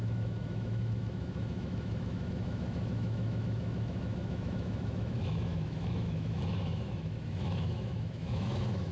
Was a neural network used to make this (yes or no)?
yes